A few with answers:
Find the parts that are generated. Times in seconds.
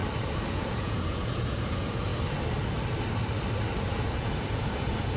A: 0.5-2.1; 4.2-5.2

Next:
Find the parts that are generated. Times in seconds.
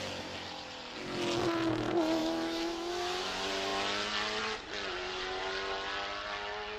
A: 2.2-2.9